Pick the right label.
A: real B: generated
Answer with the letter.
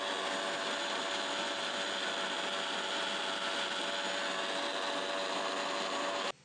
A